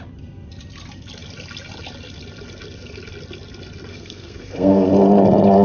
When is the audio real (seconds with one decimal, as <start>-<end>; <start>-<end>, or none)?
0.0-3.9; 4.9-5.6